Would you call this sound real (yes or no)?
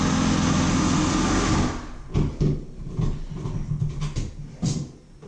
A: yes